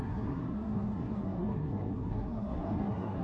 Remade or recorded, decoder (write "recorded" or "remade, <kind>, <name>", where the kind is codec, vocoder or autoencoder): remade, codec, SNAC